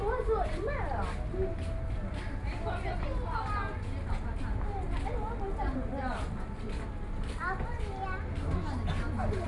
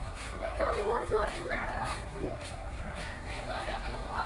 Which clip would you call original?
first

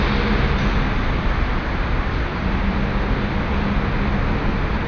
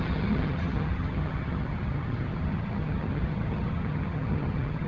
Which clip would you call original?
first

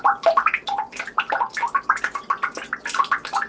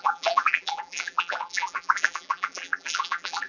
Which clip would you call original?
first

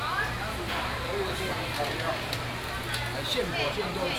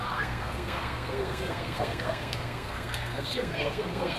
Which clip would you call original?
first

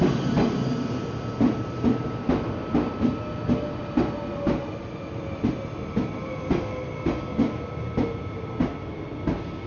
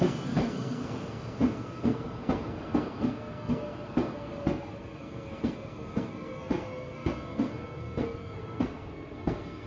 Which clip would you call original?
first